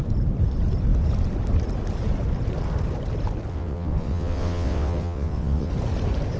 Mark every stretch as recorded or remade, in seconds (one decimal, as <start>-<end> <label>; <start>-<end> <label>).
0.0-3.5 recorded; 3.5-5.7 remade; 5.7-6.4 recorded